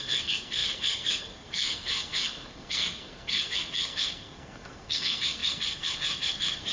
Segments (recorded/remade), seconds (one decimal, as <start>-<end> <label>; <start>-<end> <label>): 0.0-6.7 remade